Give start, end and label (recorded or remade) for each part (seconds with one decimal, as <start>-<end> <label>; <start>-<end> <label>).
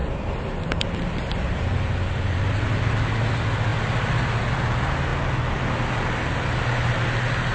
0.0-2.6 remade; 2.6-3.7 recorded; 3.7-4.5 remade; 4.5-7.5 recorded